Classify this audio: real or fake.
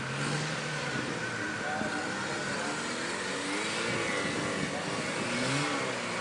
real